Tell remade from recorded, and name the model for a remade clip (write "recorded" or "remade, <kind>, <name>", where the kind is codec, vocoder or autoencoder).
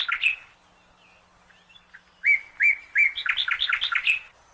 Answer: recorded